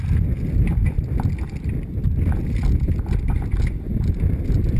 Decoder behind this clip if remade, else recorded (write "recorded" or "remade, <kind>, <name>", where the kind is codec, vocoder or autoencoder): recorded